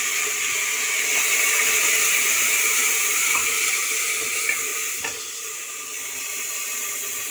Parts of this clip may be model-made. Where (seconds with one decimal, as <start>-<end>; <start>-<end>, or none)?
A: 3.1-4.1